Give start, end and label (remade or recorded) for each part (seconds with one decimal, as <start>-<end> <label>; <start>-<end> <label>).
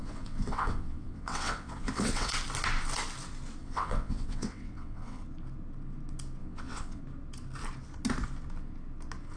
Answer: 0.0-2.3 remade; 2.3-3.6 recorded; 3.6-5.2 remade; 5.2-6.4 recorded; 6.4-7.0 remade; 7.0-9.4 recorded